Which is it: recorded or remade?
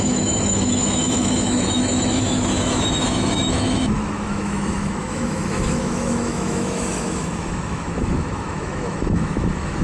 remade